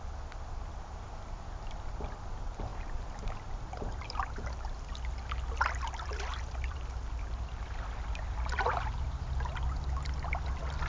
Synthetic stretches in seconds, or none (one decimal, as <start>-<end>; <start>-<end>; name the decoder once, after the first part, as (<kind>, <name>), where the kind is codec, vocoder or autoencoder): none